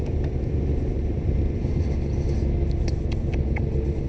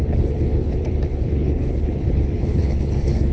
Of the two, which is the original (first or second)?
first